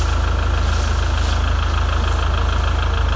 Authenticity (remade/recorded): recorded